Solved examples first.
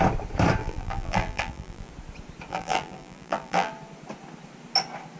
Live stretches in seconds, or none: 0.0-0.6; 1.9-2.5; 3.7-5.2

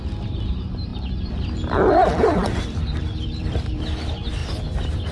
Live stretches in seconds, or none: 0.0-0.9; 4.0-4.4

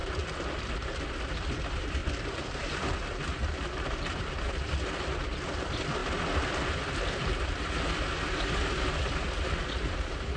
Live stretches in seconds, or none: 0.0-2.0; 4.7-10.4

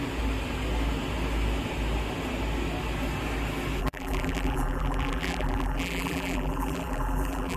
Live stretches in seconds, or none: 0.0-3.8

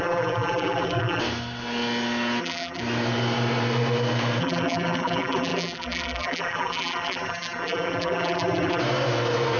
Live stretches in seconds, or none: 1.2-2.4; 2.8-4.4; 8.8-9.6